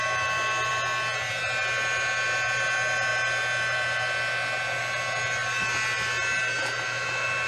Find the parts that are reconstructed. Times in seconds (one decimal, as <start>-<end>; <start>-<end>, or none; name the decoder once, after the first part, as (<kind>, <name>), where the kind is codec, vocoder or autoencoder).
none